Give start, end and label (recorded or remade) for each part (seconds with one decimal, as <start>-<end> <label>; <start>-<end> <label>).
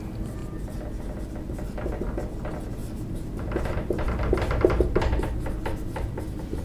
0.0-0.4 recorded; 0.4-1.0 remade; 1.0-2.8 recorded; 2.8-4.7 remade; 4.7-6.6 recorded